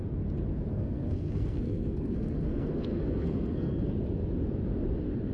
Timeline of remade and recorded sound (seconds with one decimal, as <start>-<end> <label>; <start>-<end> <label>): 0.0-0.7 recorded; 0.7-3.9 remade; 3.9-5.3 recorded